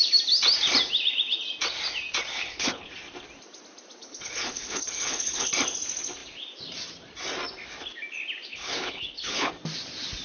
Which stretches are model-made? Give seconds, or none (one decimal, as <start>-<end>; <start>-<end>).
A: 2.3-2.9; 4.0-5.5; 8.5-9.5